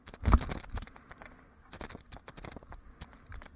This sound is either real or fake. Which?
real